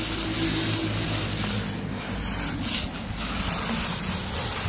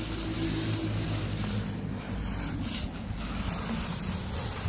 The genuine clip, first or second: first